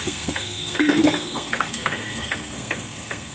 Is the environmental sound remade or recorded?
remade